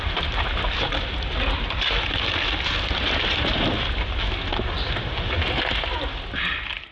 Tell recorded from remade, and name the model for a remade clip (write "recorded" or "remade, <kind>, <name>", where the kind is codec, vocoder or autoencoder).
recorded